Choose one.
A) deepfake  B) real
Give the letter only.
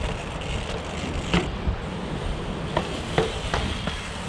B